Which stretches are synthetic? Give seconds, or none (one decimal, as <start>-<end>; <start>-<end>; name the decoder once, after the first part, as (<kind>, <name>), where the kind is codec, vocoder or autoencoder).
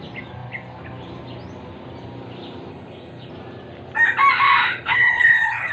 2.7-3.3 (codec, HILCodec); 4.7-5.7